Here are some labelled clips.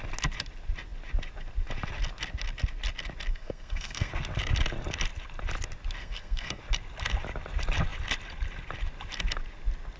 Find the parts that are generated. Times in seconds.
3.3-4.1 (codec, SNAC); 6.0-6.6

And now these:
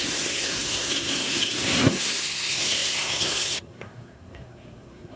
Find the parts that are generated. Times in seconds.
0.0-5.2 (codec, SNAC)

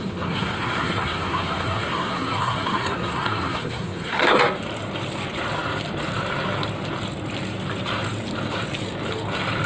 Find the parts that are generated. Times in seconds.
0.0-4.4 (codec, SNAC)